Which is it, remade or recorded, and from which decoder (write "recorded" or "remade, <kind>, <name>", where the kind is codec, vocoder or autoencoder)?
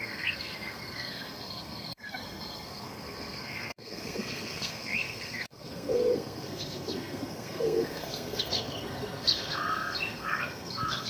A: remade, codec, SNAC